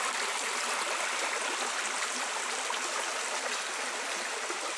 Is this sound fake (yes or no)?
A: no